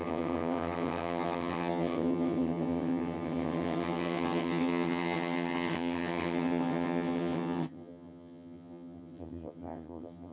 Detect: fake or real fake